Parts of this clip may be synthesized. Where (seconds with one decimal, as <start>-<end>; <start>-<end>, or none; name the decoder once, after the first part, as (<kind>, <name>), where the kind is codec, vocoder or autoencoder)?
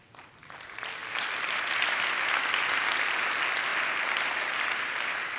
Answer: none